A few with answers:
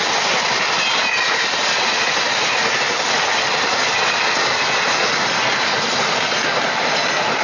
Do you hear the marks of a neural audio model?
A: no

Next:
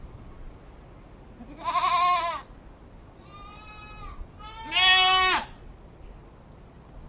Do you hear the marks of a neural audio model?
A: no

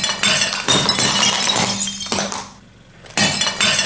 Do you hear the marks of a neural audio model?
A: no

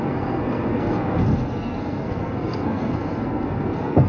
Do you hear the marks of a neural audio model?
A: yes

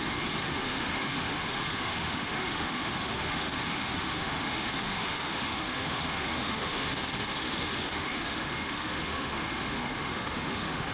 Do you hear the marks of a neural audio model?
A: yes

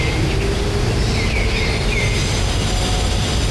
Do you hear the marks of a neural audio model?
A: no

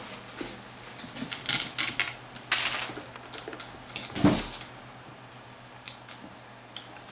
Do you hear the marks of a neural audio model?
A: no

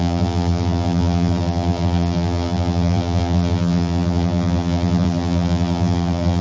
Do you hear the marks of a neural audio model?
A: yes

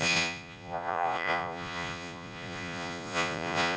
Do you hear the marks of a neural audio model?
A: yes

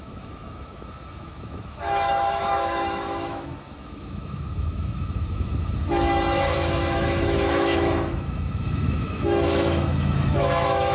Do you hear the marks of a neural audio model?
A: yes